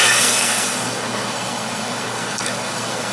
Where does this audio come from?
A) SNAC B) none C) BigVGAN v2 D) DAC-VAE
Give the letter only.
A